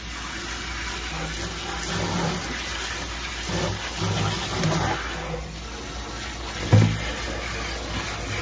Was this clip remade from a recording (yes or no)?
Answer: no